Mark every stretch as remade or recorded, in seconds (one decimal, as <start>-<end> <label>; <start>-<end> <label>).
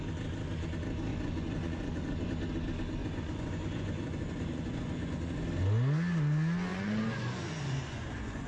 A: 0.0-1.1 recorded; 1.1-2.3 remade; 2.3-3.0 recorded; 3.0-5.4 remade; 5.4-6.7 recorded; 6.7-8.5 remade